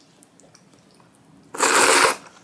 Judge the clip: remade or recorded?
recorded